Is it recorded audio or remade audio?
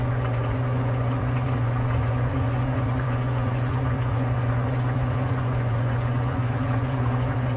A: remade